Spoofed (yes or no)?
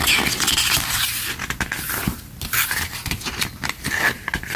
no